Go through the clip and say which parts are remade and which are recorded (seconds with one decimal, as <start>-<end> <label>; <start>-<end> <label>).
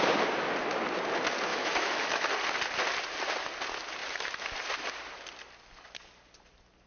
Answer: 0.0-1.5 recorded; 1.5-2.3 remade; 2.3-6.9 recorded